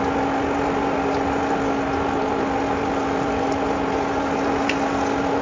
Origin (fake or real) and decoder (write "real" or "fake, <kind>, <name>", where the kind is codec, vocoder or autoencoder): real